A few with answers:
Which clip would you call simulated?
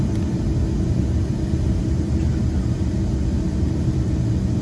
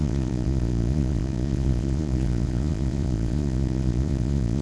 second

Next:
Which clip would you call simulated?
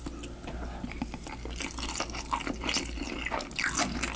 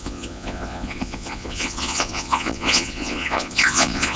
second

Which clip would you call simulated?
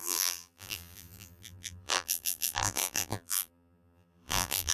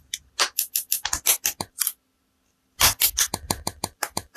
first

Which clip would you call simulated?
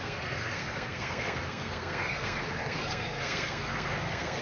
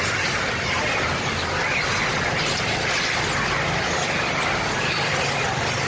first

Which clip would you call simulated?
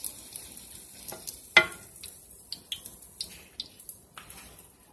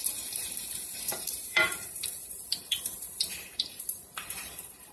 second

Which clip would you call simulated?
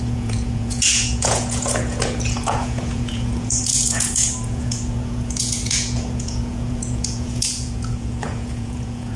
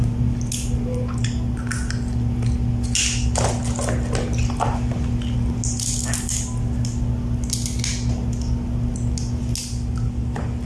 first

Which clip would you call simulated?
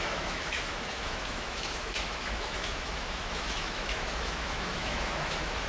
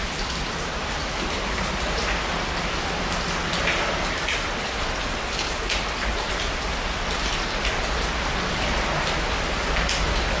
first